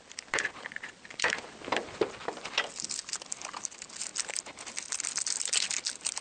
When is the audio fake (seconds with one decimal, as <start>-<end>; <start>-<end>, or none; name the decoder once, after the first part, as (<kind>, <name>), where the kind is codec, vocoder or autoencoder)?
none